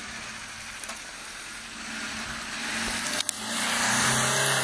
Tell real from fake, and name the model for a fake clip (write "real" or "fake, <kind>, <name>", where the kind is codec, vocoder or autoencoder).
real